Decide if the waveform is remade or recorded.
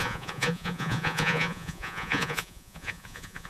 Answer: remade